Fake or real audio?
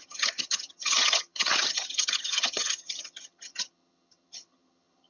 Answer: fake